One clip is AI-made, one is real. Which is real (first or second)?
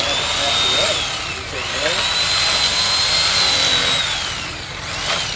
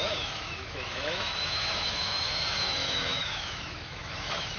first